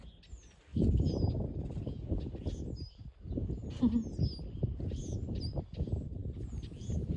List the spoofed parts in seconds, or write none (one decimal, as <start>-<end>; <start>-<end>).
0.0-0.7; 5.0-6.2